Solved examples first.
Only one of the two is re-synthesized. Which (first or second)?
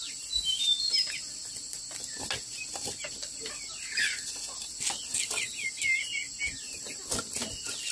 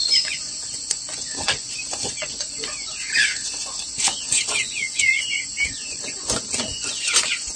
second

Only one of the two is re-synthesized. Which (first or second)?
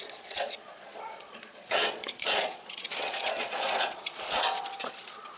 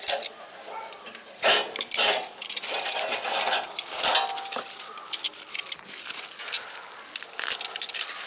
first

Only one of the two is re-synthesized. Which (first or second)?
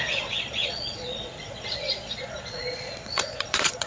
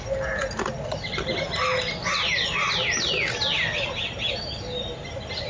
first